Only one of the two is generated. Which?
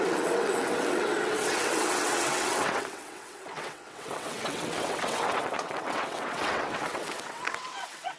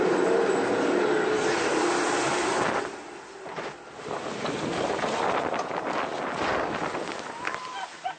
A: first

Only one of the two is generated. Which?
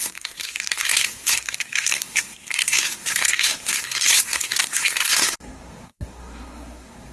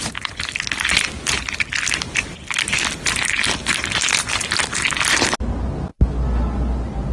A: first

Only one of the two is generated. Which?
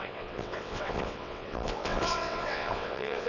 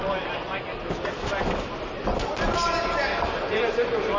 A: first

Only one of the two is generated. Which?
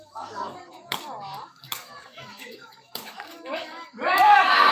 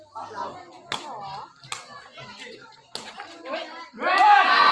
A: first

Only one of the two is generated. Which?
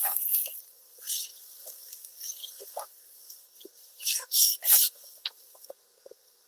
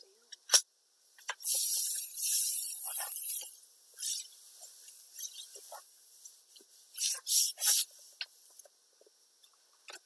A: first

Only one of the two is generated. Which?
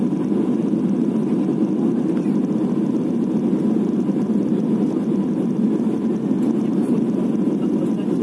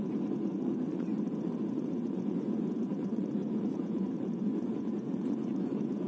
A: second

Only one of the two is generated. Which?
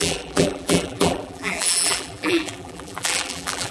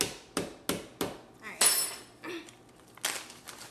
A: first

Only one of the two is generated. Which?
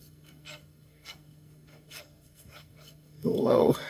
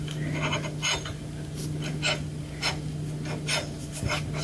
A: first